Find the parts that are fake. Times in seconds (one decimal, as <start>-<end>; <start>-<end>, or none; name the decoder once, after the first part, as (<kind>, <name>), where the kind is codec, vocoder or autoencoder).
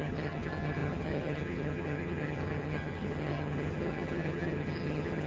0.0-5.3 (vocoder, HiFi-GAN)